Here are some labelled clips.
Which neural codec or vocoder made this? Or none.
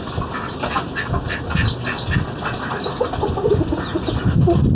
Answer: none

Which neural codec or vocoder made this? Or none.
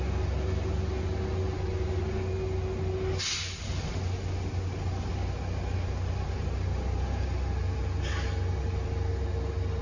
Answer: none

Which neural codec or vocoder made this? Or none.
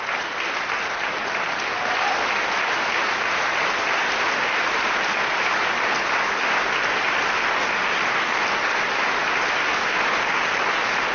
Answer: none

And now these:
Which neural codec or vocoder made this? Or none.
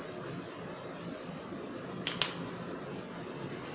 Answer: none